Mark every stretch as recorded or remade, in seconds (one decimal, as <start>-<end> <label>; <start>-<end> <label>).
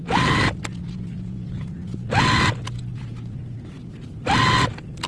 0.0-5.1 recorded